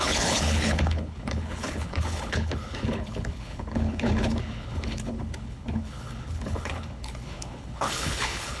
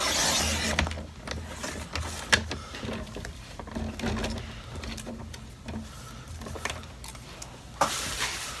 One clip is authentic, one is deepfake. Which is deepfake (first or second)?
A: first